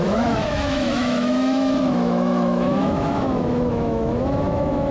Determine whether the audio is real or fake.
fake